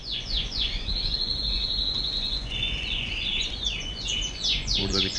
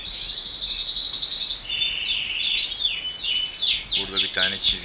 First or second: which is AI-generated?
first